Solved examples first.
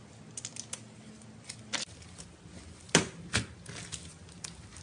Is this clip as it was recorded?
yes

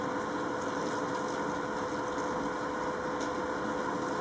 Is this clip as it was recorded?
yes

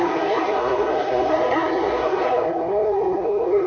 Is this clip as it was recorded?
no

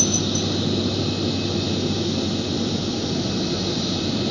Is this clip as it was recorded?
yes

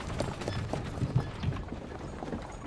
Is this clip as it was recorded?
no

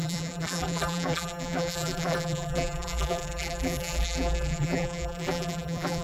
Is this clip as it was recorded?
no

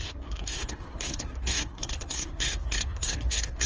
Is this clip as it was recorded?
no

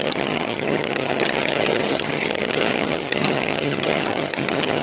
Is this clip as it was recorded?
no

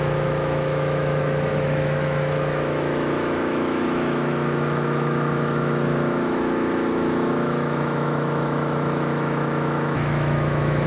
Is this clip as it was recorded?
no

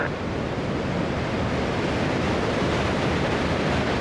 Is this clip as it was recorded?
yes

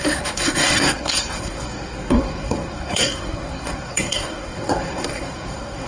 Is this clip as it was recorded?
no